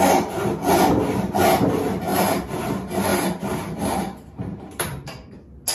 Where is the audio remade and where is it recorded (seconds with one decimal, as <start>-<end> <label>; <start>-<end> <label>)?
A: 0.0-2.1 recorded; 2.1-2.6 remade; 2.6-3.1 recorded; 3.1-5.3 remade; 5.3-5.7 recorded